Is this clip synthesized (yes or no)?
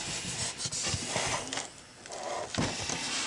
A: no